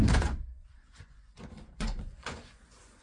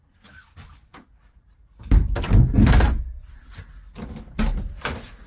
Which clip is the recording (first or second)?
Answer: second